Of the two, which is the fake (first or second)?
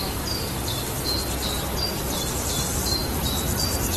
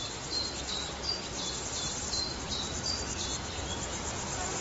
second